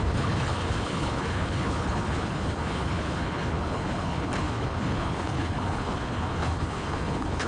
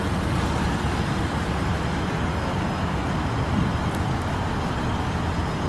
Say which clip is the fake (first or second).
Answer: first